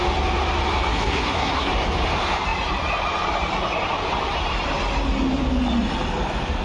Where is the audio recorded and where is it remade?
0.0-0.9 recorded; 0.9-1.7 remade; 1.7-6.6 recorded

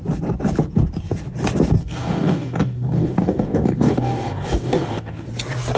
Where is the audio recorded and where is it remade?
0.0-1.8 recorded; 1.8-5.3 remade; 5.3-5.8 recorded

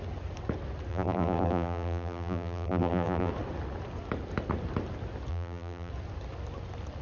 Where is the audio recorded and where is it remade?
0.0-0.9 recorded; 0.9-3.3 remade; 3.3-5.3 recorded; 5.3-5.9 remade; 5.9-7.0 recorded

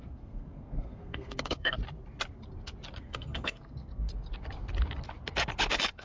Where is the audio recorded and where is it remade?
0.0-1.8 remade; 1.8-3.0 recorded; 3.0-4.1 remade; 4.1-6.0 recorded

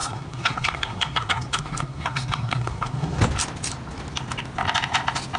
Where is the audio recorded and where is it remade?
0.0-3.2 remade; 3.2-5.4 recorded

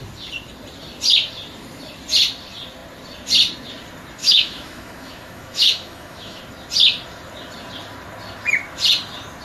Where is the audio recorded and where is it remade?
0.0-4.2 recorded; 4.2-6.4 remade; 6.4-9.4 recorded